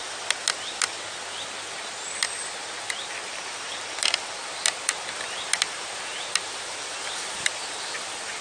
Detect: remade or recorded recorded